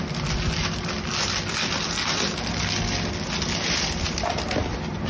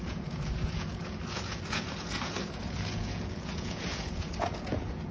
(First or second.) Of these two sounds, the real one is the first